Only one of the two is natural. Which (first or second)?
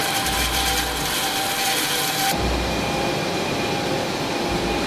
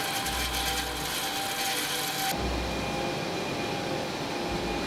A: second